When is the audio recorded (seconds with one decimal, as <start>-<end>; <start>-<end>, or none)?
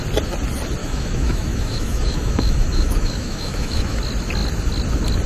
0.0-0.8; 4.0-5.3